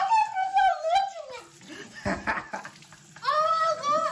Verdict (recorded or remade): recorded